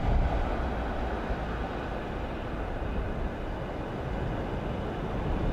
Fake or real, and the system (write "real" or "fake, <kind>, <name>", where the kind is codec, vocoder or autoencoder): real